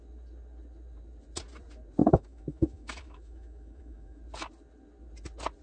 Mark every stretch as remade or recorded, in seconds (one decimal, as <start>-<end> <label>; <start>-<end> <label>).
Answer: 0.0-2.0 recorded; 2.0-4.2 remade; 4.2-5.6 recorded